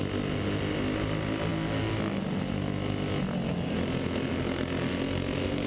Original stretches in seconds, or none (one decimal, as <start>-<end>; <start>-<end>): 0.0-5.7

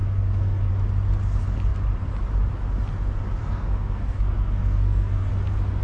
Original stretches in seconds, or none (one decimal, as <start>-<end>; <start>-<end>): 0.7-3.4; 5.3-5.8

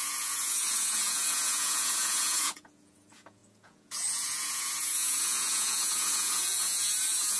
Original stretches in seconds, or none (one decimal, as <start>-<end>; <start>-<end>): none

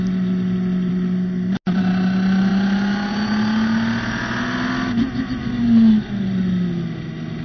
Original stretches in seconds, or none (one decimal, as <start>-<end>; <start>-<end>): 0.0-7.4

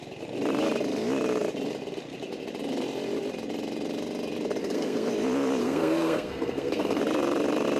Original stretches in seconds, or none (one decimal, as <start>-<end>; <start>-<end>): 0.0-4.6; 5.1-5.6; 7.0-7.8

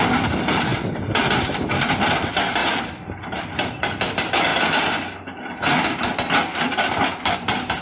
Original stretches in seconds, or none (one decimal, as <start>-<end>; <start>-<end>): 0.0-7.8

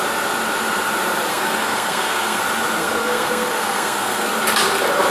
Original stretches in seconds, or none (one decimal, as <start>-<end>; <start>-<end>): 0.0-1.3; 2.4-2.8; 4.3-5.1